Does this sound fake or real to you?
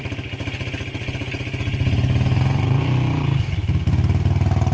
real